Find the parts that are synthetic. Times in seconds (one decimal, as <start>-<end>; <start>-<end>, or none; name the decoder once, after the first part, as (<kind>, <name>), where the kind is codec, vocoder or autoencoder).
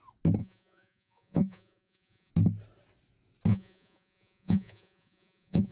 0.4-2.3 (vocoder, Vocos); 3.5-5.7